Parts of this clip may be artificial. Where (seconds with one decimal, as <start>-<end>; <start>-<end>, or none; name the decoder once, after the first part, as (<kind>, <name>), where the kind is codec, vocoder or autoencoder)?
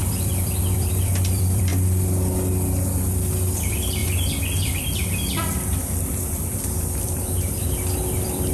0.0-1.7 (vocoder, BigVGAN v2); 3.6-8.5